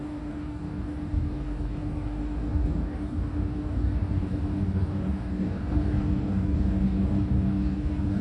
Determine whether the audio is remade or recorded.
remade